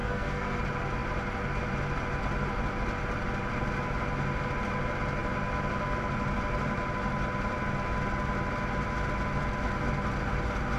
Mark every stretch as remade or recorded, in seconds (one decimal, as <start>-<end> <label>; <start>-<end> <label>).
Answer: 0.0-0.6 remade; 0.6-10.8 recorded